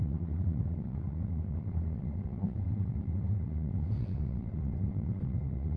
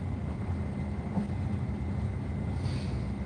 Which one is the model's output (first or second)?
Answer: first